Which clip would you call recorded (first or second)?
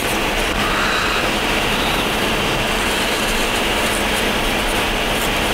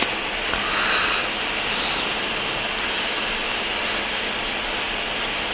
second